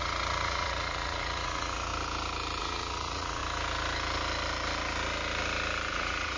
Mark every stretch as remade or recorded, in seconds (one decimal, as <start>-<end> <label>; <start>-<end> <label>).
0.0-1.9 remade; 1.9-2.6 recorded; 2.6-3.4 remade; 3.4-5.9 recorded; 5.9-6.4 remade